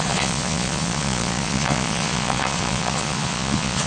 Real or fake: fake